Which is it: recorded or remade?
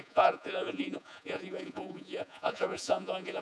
remade